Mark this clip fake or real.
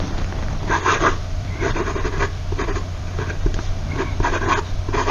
fake